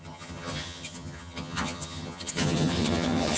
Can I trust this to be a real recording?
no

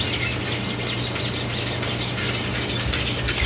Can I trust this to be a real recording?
yes